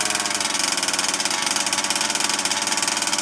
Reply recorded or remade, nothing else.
recorded